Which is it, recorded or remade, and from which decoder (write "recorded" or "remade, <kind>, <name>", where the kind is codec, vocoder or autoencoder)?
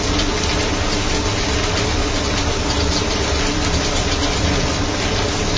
recorded